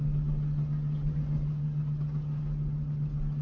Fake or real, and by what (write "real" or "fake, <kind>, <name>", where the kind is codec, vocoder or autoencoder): real